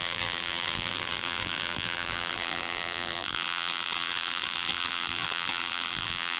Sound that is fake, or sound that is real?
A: fake